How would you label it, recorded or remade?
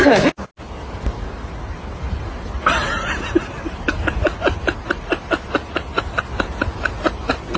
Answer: recorded